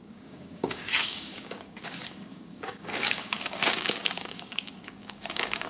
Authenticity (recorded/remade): remade